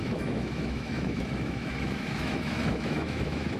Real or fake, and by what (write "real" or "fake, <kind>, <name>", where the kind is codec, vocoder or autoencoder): fake, autoencoder, DAC-VAE